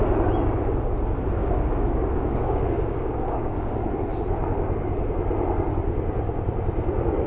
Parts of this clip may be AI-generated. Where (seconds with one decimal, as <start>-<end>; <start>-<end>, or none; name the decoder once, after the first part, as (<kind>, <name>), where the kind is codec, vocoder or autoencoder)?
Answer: 1.4-3.9 (codec, DAC)